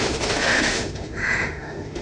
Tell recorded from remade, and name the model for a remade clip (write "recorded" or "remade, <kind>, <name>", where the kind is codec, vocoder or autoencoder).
remade, autoencoder, DAC-VAE